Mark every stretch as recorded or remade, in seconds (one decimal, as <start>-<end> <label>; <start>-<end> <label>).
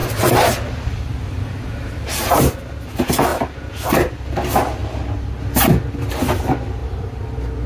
0.0-2.4 remade; 2.4-6.8 recorded; 6.8-7.7 remade